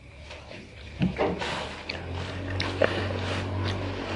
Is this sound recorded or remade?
recorded